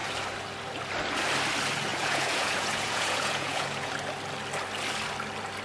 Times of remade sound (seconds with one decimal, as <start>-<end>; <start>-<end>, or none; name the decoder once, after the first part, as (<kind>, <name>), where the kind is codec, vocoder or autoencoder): 1.9-3.9 (vocoder, Vocos)